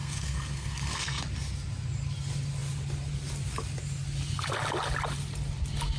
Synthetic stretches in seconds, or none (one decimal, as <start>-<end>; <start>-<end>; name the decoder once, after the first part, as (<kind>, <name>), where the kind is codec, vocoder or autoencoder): 0.0-1.2 (codec, SNAC)